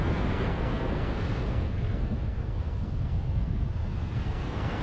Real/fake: fake